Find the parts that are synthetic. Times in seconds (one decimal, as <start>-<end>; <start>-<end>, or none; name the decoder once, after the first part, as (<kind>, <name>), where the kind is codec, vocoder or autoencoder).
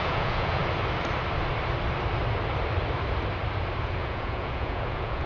0.0-0.6 (vocoder, Vocos); 3.8-5.3